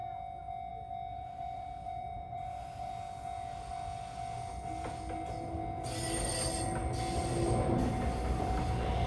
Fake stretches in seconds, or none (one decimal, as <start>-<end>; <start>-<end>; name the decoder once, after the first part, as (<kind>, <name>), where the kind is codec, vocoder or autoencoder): 1.1-2.9 (vocoder, BigVGAN v2)